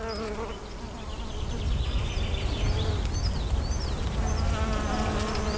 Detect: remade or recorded recorded